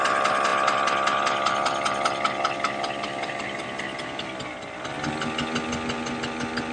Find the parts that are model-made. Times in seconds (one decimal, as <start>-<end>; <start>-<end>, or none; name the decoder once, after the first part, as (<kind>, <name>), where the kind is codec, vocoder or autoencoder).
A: none